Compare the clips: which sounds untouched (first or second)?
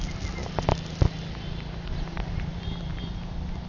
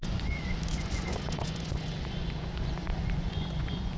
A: first